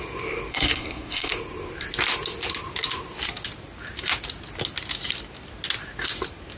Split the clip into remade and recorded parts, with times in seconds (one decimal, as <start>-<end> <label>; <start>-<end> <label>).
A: 0.0-0.5 recorded; 0.5-1.3 remade; 1.3-6.6 recorded